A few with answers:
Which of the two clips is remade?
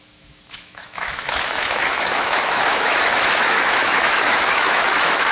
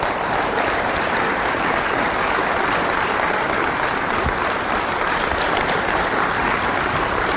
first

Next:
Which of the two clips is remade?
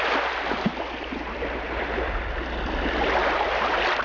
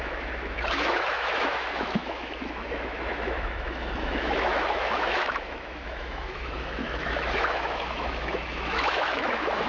second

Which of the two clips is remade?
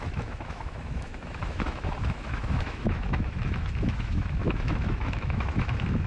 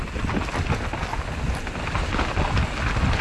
first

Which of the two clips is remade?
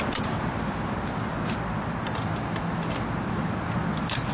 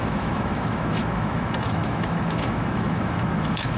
second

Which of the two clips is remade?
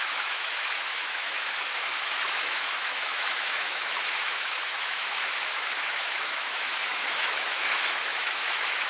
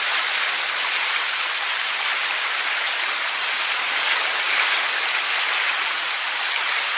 first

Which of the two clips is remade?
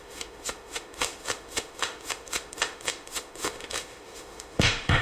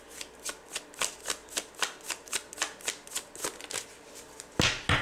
first